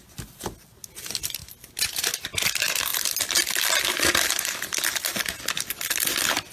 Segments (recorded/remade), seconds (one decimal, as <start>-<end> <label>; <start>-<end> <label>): 0.0-6.5 recorded